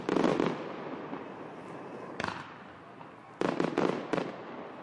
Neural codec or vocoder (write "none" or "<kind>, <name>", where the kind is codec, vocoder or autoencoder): none